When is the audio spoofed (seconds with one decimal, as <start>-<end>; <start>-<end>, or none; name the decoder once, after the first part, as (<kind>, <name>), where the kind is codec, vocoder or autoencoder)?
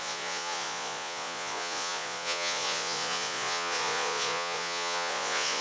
0.0-5.6 (vocoder, Vocos)